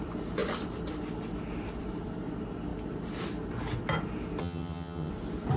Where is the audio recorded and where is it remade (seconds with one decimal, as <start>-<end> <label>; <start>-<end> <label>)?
0.0-4.4 recorded; 4.4-5.1 remade; 5.1-5.6 recorded